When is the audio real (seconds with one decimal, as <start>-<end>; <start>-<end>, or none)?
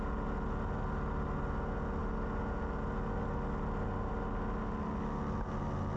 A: 0.0-6.0